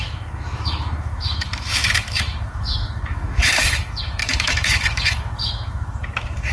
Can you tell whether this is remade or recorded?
remade